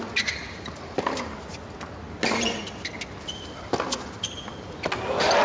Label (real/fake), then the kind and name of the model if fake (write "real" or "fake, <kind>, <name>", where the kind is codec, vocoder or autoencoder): real